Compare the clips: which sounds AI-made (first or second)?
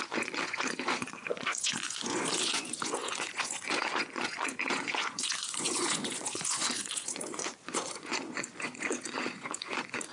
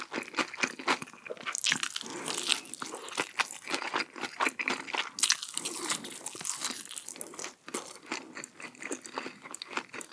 first